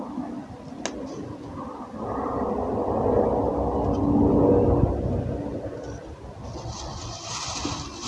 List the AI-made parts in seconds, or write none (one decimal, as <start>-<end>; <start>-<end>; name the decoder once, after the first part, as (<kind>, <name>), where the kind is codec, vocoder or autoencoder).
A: none